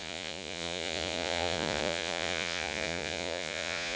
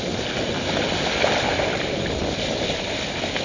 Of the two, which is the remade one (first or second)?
first